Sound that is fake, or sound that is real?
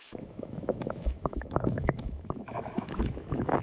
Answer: fake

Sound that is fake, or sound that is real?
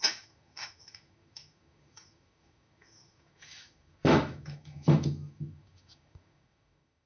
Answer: fake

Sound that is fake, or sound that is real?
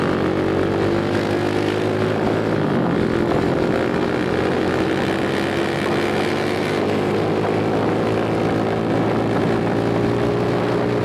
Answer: real